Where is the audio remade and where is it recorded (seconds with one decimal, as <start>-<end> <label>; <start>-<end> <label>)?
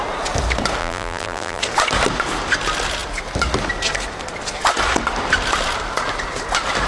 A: 0.0-0.8 recorded; 0.8-1.6 remade; 1.6-6.9 recorded